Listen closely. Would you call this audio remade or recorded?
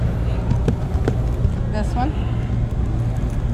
recorded